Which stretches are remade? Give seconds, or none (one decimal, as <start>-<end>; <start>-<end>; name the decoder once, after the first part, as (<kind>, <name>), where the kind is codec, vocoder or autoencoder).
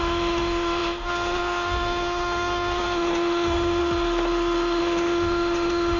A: 0.0-3.8 (autoencoder, DAC-VAE); 4.8-6.0